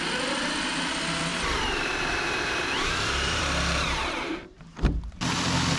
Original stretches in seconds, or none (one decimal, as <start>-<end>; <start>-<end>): 0.0-1.3; 4.8-5.8

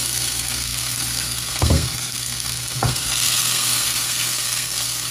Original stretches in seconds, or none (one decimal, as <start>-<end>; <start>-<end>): none